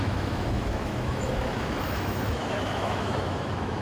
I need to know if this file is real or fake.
fake